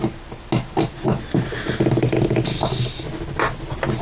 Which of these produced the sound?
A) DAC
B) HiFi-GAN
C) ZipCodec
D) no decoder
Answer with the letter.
D